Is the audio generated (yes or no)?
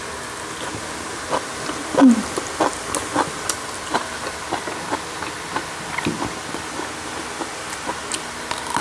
no